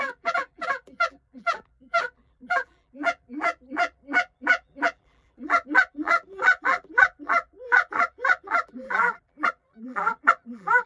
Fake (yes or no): yes